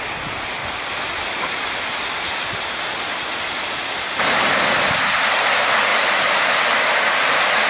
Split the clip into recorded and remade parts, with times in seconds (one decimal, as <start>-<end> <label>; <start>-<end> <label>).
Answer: 0.0-7.7 recorded